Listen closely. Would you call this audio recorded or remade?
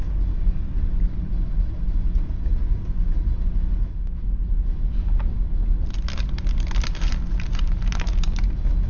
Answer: recorded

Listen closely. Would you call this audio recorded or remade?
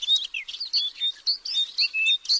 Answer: recorded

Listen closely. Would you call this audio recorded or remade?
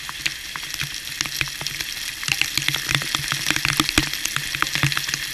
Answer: recorded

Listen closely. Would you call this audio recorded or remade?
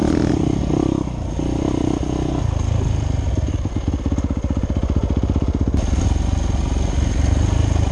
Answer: recorded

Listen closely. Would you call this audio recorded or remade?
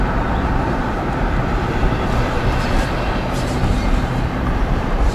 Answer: remade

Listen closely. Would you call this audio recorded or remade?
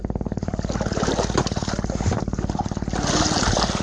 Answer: recorded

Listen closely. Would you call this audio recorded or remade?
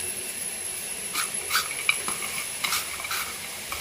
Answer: remade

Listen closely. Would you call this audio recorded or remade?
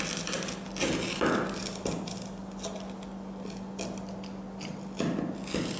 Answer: recorded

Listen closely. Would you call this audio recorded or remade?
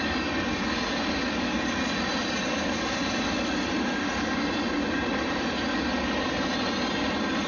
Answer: recorded